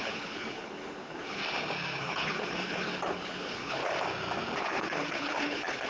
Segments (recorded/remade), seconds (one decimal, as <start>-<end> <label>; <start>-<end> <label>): 0.0-1.4 remade; 1.4-2.0 recorded; 2.0-3.8 remade; 3.8-4.6 recorded; 4.6-5.9 remade